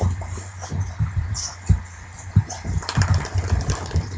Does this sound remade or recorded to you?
remade